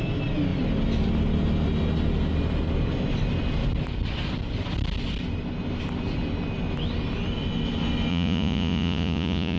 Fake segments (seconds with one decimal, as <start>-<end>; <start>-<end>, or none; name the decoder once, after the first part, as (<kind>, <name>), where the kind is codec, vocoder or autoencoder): 8.1-9.6 (vocoder, Vocos)